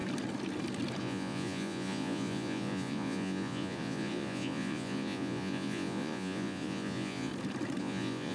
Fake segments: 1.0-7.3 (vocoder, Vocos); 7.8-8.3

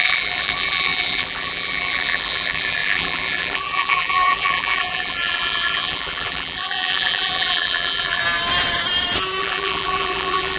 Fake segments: 0.0-8.2 (vocoder, BigVGAN v2); 9.4-10.6

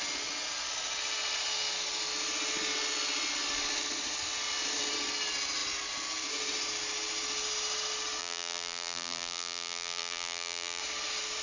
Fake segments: 8.2-10.8 (vocoder, BigVGAN v2)

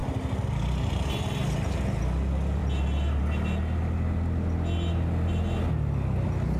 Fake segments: none

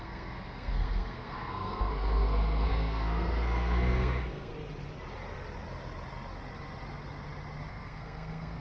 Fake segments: 0.0-4.5 (codec, SNAC); 7.7-8.6

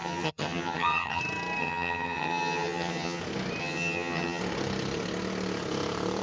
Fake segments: 0.0-1.2 (vocoder, HiFi-GAN); 1.6-3.2; 3.6-4.4